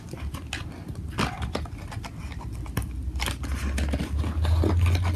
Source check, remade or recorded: recorded